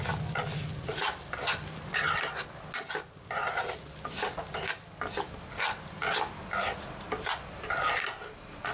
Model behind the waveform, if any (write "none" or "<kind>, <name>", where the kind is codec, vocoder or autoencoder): none